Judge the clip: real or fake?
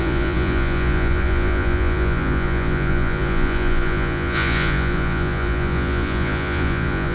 fake